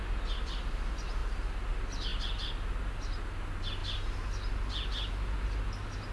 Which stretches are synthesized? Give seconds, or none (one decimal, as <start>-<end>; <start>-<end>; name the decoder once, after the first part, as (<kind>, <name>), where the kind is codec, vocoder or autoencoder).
none